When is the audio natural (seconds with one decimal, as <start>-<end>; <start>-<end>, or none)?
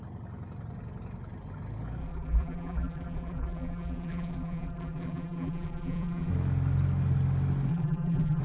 0.0-2.0; 6.3-7.7